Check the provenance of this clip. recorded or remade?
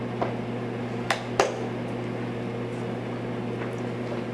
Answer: recorded